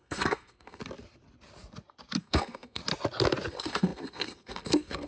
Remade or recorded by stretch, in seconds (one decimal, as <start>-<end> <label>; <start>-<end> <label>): 0.0-0.8 remade; 0.8-2.2 recorded; 2.2-2.8 remade; 2.8-3.5 recorded; 3.5-5.1 remade